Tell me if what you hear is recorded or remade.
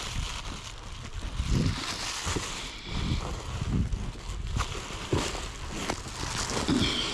recorded